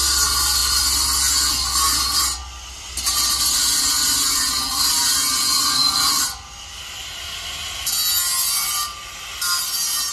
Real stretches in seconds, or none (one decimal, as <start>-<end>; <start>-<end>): 0.0-10.1